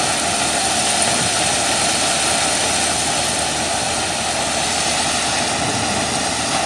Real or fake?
real